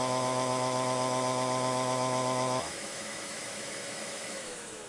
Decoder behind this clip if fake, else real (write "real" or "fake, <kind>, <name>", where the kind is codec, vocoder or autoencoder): fake, autoencoder, DAC-VAE